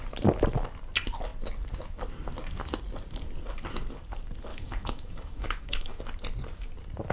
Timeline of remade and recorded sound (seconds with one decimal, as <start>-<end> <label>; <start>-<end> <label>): 0.0-4.5 recorded; 4.5-6.0 remade; 6.0-7.1 recorded